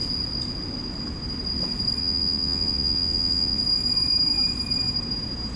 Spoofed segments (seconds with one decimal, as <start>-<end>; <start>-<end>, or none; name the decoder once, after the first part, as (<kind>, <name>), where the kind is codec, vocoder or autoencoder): 2.0-3.6 (vocoder, WaveNeXt)